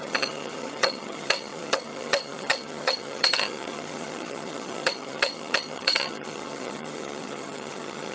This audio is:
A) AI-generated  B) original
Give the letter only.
A